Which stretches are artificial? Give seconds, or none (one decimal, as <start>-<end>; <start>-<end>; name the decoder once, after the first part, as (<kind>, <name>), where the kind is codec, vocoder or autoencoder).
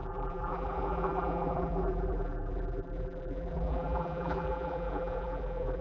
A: 0.0-5.8 (vocoder, BigVGAN v2)